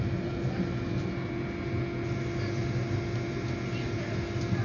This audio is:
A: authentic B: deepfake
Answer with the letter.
A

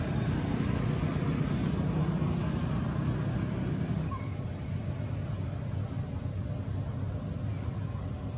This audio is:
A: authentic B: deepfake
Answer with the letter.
A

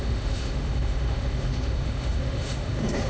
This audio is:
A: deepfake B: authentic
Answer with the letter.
A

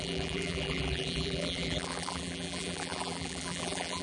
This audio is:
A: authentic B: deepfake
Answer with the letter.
B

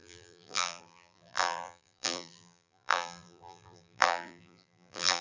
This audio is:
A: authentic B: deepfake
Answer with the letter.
B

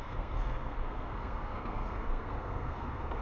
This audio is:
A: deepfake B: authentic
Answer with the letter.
A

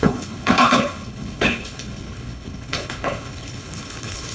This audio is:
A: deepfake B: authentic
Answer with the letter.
A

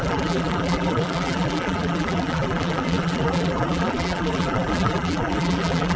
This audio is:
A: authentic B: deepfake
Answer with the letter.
B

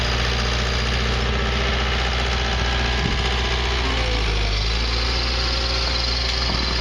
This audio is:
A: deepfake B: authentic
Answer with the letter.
B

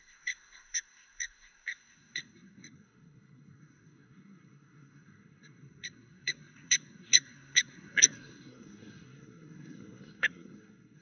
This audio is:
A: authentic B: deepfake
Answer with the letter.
B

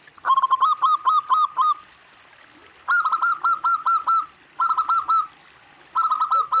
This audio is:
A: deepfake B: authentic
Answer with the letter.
B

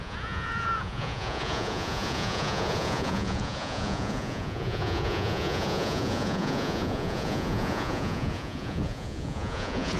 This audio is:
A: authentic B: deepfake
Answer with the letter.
B